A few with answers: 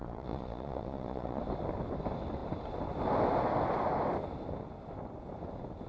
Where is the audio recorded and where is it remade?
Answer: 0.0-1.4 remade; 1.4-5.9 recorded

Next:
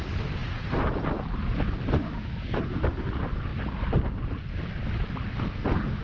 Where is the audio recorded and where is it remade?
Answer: 0.0-6.0 recorded

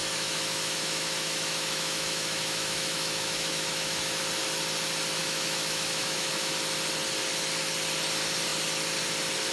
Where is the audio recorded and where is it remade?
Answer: 0.0-4.2 remade; 4.2-5.2 recorded; 5.2-6.5 remade; 6.5-9.5 recorded

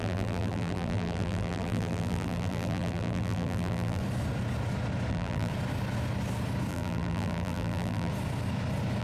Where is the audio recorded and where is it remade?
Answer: 0.0-4.0 remade; 4.0-5.1 recorded; 5.1-5.5 remade; 5.5-6.7 recorded; 6.7-8.1 remade; 8.1-9.0 recorded

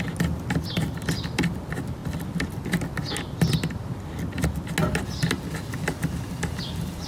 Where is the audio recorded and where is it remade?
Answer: 0.0-7.1 recorded

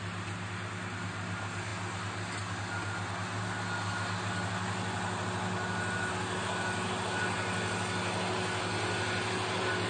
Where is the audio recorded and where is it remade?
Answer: 0.0-9.9 recorded

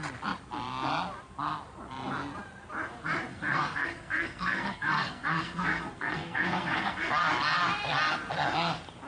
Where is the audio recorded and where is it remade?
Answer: 0.0-3.3 recorded; 3.3-7.1 remade; 7.1-9.1 recorded